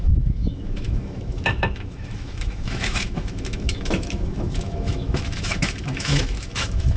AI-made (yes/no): yes